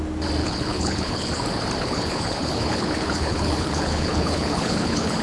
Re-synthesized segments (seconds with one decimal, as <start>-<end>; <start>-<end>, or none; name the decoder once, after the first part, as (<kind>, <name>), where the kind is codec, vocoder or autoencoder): 0.4-1.3 (codec, HILCodec); 1.8-5.2